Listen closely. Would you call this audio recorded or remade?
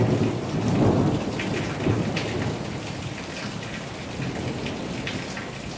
recorded